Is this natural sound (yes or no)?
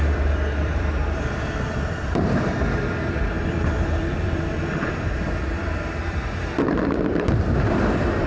no